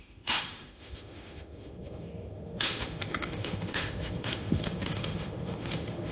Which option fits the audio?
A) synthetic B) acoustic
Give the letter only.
A